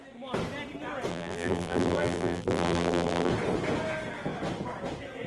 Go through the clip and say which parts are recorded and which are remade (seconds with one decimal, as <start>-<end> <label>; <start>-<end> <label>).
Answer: 0.0-1.1 recorded; 1.1-3.3 remade; 3.3-5.3 recorded

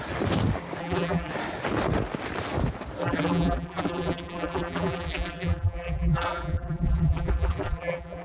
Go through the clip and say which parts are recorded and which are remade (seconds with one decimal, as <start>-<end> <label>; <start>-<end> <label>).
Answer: 0.0-0.8 recorded; 0.8-1.3 remade; 1.3-3.0 recorded; 3.0-8.2 remade